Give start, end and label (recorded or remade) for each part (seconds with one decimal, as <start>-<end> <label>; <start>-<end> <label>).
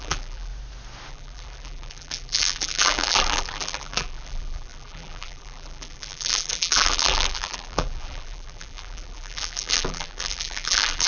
0.0-0.5 remade; 0.5-1.1 recorded; 1.1-11.1 remade